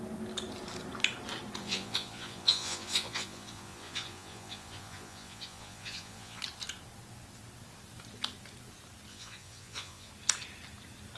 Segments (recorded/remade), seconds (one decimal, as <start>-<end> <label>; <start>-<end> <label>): 0.0-1.6 recorded; 1.6-6.4 remade; 6.4-9.1 recorded; 9.1-10.1 remade; 10.1-11.2 recorded